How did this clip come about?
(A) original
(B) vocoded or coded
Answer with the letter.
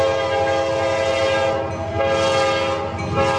A